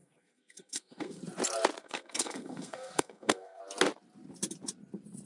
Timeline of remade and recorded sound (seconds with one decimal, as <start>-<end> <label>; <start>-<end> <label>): 0.0-1.2 remade; 1.2-1.8 recorded; 1.8-3.6 remade; 3.6-5.3 recorded

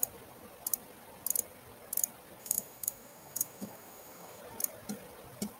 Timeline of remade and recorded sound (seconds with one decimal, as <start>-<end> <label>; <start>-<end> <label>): 0.0-2.4 recorded; 2.4-4.4 remade; 4.4-5.6 recorded

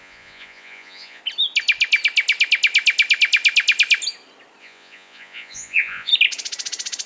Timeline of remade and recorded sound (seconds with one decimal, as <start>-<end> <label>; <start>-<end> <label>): 0.0-1.2 remade; 1.2-4.6 recorded; 4.6-6.1 remade; 6.1-7.1 recorded

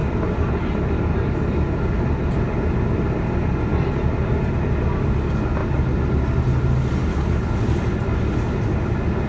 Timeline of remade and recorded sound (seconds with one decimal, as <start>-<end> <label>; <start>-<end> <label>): 0.0-7.1 recorded; 7.1-7.6 remade; 7.6-9.3 recorded